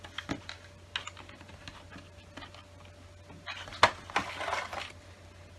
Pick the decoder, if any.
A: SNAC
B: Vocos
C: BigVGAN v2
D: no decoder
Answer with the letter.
D